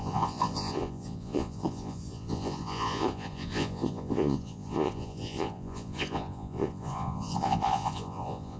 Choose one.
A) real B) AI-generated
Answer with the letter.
B